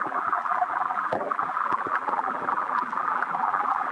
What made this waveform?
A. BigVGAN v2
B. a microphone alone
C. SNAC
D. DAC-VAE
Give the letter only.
A